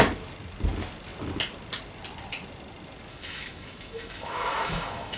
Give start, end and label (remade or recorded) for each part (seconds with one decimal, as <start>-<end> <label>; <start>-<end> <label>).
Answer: 0.0-3.1 recorded; 3.1-5.2 remade